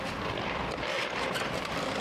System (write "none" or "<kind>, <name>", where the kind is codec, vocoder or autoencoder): vocoder, BigVGAN v2